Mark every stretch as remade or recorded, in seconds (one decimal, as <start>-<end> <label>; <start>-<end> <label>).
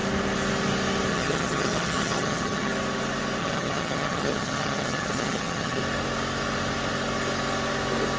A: 0.0-1.1 recorded; 1.1-2.7 remade; 2.7-3.4 recorded; 3.4-5.8 remade; 5.8-8.2 recorded